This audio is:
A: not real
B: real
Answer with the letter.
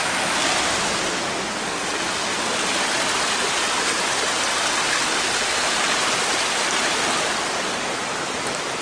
B